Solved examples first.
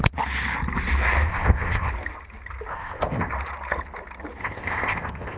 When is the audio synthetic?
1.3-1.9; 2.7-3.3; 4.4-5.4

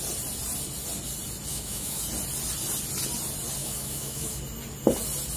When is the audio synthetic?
1.5-2.0; 3.6-4.4

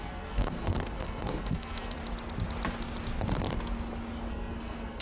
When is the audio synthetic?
0.0-2.0; 4.3-5.0

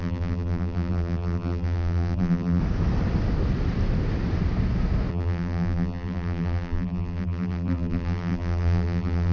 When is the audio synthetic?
0.0-2.6; 5.1-9.3

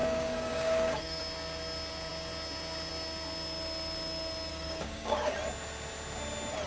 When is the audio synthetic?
0.0-1.2; 4.5-5.3